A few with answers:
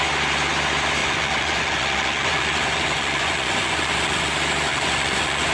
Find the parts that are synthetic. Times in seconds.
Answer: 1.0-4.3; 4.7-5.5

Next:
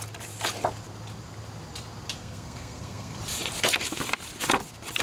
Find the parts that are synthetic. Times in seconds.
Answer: 2.2-3.2

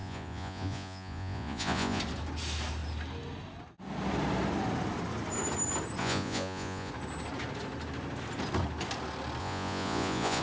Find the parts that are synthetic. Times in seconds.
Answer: 0.0-2.0; 6.0-6.9; 9.4-10.4